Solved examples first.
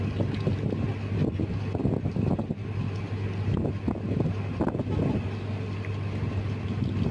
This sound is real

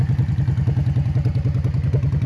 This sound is real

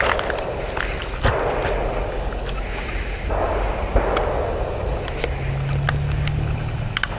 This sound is real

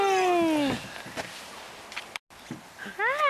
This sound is real